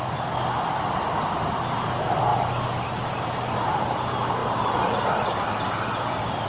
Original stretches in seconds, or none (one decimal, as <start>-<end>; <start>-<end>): 0.0-6.5